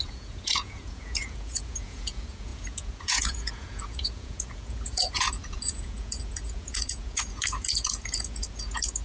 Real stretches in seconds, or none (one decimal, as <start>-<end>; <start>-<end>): none